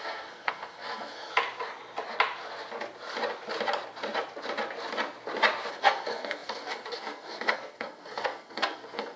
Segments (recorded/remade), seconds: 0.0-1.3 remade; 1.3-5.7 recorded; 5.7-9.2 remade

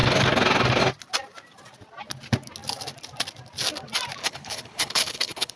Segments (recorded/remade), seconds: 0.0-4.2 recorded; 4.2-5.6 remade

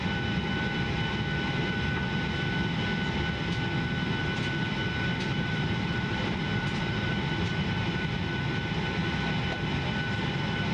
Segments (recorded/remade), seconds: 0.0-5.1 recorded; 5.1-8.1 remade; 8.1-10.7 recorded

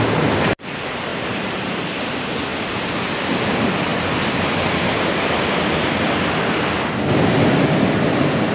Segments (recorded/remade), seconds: 0.0-1.1 recorded; 1.1-1.8 remade; 1.8-8.5 recorded

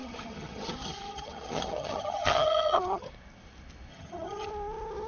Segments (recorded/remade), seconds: 0.0-3.1 remade; 3.1-3.9 recorded; 3.9-4.5 remade; 4.5-5.1 recorded